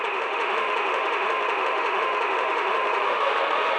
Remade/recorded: remade